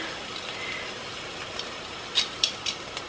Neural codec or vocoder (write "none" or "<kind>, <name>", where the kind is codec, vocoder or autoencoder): none